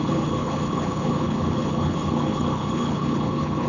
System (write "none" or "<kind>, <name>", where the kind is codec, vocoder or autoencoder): codec, HILCodec